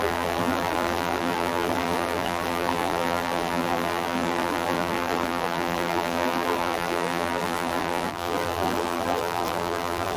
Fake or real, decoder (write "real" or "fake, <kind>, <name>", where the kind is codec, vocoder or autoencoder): fake, vocoder, BigVGAN v2